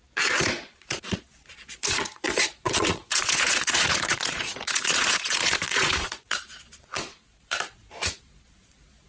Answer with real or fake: fake